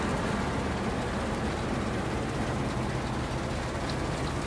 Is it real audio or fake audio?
real